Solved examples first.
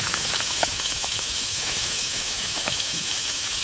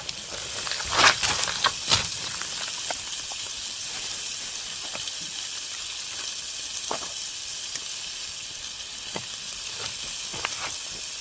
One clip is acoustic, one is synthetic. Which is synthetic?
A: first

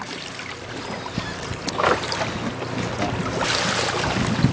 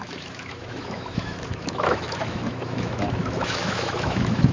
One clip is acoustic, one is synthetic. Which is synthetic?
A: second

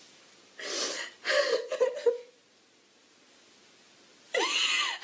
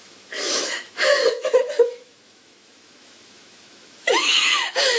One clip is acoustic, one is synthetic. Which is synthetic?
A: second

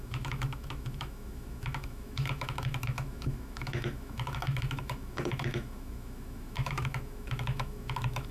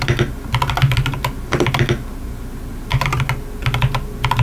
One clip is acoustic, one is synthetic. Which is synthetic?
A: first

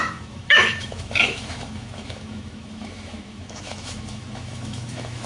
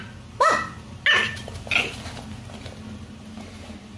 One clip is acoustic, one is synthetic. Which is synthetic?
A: first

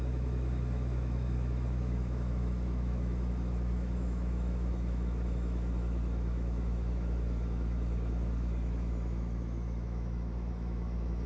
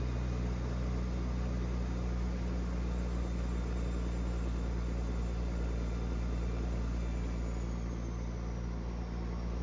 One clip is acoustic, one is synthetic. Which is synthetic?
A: first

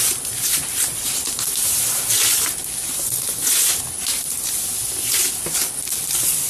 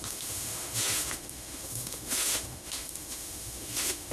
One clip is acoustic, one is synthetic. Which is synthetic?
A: second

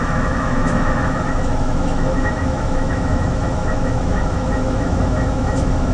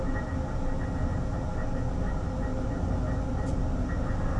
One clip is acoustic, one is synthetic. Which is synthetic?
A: first